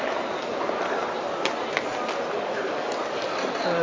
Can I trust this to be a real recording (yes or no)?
yes